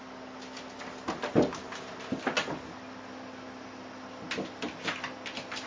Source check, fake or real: real